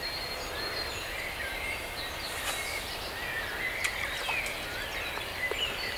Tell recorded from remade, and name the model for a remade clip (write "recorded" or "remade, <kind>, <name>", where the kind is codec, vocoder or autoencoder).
recorded